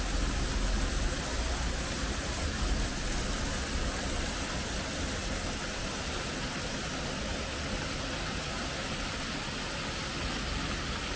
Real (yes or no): yes